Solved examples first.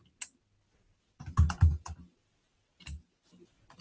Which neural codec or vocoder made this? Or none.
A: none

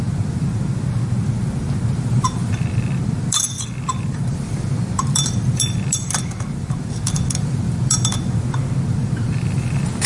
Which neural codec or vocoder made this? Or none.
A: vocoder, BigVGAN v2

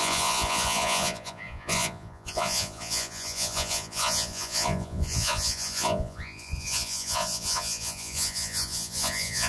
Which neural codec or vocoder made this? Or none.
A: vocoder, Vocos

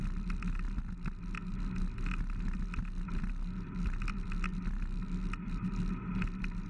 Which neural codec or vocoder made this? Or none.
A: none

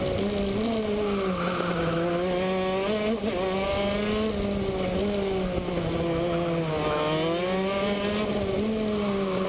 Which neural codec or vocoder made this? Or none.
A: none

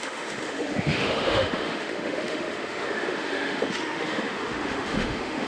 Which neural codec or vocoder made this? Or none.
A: autoencoder, DAC-VAE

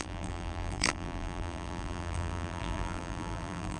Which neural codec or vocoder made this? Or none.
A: vocoder, BigVGAN v2